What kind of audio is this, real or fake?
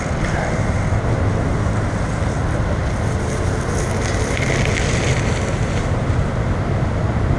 real